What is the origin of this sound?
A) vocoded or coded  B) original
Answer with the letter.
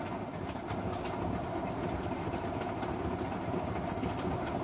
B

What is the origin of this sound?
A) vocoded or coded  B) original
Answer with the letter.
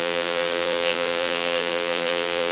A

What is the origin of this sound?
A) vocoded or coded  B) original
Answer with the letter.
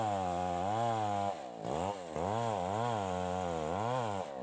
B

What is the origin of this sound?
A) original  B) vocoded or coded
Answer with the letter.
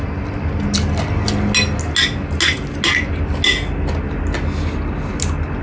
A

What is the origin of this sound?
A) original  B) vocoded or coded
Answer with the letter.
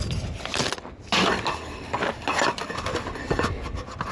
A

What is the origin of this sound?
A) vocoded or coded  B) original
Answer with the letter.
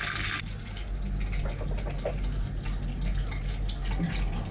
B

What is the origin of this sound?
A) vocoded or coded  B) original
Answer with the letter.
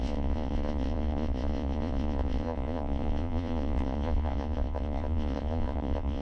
A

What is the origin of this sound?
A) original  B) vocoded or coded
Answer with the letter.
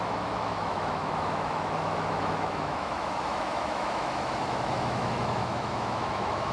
B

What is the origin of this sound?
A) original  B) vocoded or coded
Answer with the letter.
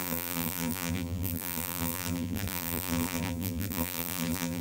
B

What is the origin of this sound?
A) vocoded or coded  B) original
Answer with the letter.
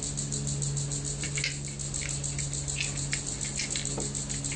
B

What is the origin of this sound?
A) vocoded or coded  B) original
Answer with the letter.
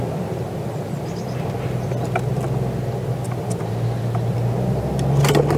B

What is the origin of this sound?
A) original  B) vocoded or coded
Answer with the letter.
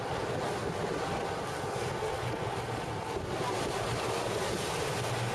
A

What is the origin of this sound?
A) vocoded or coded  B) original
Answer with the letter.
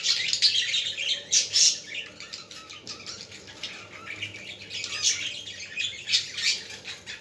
B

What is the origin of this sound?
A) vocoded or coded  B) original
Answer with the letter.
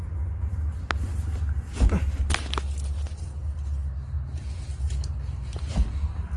B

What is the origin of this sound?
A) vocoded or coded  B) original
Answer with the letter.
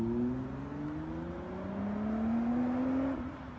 B